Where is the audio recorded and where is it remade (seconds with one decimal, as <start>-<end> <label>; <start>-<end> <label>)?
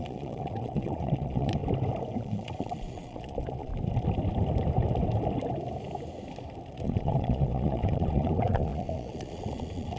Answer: 0.0-1.6 remade; 1.6-2.2 recorded; 2.2-3.7 remade; 3.7-6.7 recorded; 6.7-10.0 remade